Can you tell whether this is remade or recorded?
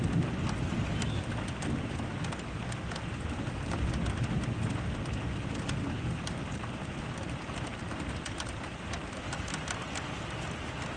recorded